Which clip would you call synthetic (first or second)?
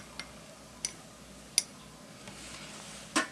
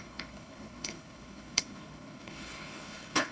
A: second